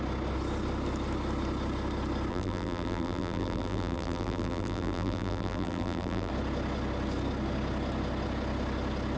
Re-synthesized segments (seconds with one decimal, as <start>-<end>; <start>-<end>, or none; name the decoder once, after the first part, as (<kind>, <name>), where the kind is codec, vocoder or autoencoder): 2.3-6.3 (vocoder, BigVGAN v2)